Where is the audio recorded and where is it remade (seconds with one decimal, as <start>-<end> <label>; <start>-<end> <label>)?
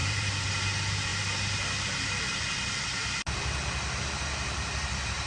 0.0-0.5 remade; 0.5-5.3 recorded